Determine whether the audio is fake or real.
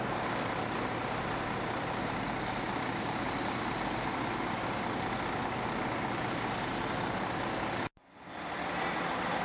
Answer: real